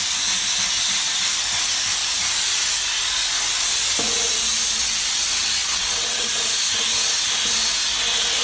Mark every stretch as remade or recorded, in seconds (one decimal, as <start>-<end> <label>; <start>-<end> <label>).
0.0-4.8 recorded; 4.8-6.3 remade; 6.3-8.4 recorded